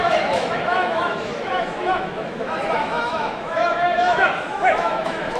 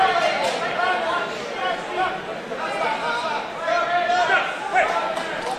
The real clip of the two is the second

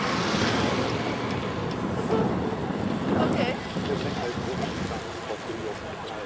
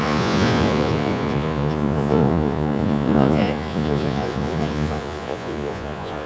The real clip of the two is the first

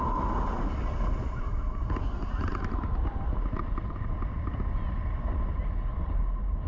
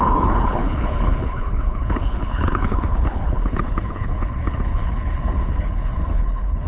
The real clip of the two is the first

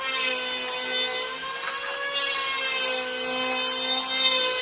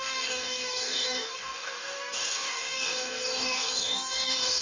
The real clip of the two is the first